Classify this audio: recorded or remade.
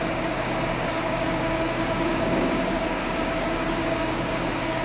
remade